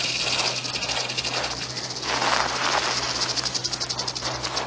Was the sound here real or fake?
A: real